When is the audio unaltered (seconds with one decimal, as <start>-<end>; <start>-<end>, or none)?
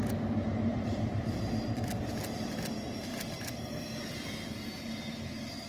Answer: 0.0-0.7; 2.1-5.7